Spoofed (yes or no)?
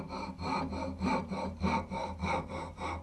no